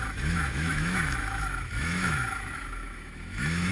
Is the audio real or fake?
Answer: fake